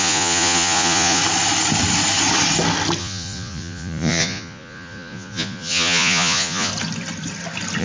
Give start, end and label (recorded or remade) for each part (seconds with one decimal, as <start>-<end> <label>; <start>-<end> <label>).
0.0-1.2 remade; 1.2-3.0 recorded; 3.0-6.7 remade; 6.7-7.8 recorded